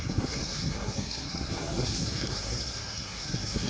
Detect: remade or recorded remade